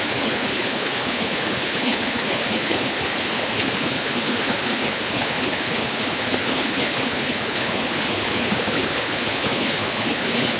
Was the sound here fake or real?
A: fake